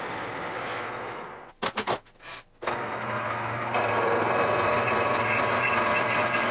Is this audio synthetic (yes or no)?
no